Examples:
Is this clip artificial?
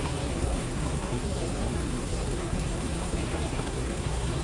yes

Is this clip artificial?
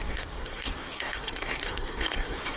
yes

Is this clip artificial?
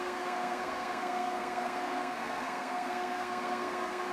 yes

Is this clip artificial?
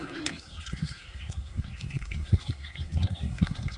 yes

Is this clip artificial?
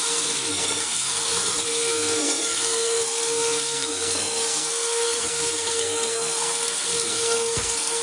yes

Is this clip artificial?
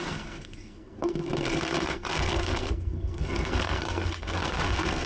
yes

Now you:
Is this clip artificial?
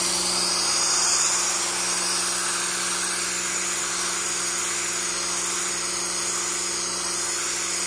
no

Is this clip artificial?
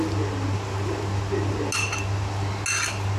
no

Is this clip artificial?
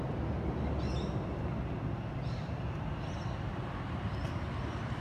no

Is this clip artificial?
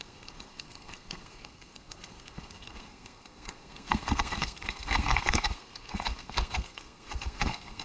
yes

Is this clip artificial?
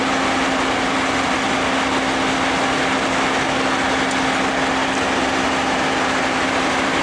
no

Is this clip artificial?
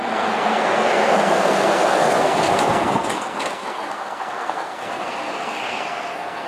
yes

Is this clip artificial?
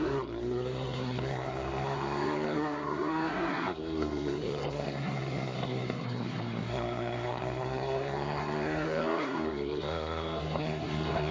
yes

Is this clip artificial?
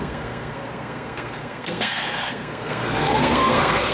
yes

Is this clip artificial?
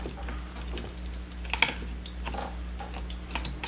no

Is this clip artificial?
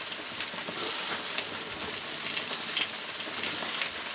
no